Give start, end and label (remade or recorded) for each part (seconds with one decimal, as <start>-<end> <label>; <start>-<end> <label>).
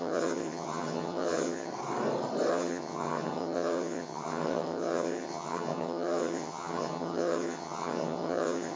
0.0-1.7 remade; 1.7-2.5 recorded; 2.5-8.8 remade